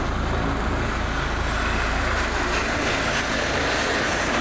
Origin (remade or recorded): recorded